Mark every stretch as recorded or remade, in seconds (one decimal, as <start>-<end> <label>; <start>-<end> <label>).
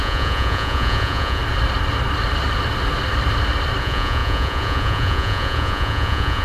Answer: 0.0-1.4 remade; 1.4-3.8 recorded; 3.8-6.4 remade